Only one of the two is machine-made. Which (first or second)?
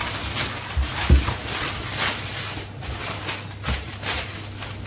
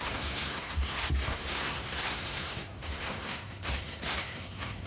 second